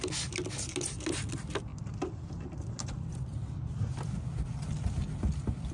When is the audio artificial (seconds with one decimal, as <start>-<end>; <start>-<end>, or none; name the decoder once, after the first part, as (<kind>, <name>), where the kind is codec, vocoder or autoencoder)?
none